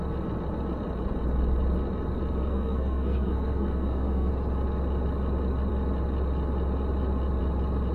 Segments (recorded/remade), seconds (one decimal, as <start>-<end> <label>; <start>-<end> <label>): 0.0-2.4 recorded; 2.4-4.3 remade; 4.3-7.9 recorded